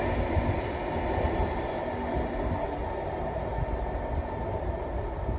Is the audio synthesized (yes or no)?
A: no